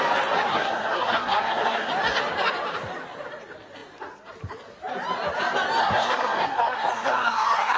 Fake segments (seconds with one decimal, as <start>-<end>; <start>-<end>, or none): 0.5-1.9; 5.8-7.8